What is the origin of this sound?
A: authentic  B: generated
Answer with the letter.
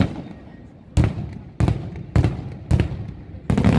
A